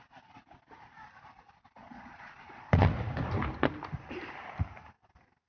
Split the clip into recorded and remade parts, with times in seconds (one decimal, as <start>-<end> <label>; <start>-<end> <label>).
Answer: 0.0-1.8 recorded; 1.8-2.9 remade; 2.9-5.5 recorded